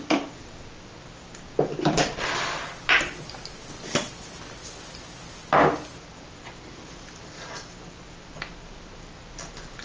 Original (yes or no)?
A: yes